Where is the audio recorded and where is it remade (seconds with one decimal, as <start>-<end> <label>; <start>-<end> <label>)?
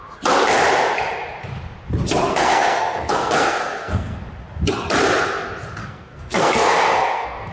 0.0-2.3 recorded; 2.3-4.2 remade; 4.2-5.8 recorded; 5.8-7.5 remade